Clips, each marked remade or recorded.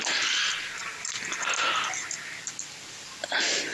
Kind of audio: recorded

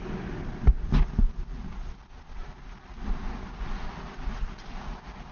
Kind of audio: recorded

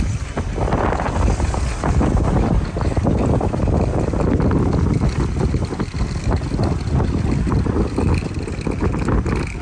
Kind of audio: recorded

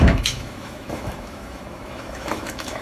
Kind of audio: remade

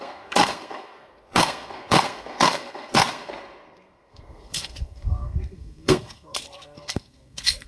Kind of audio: remade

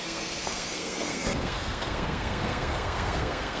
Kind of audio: remade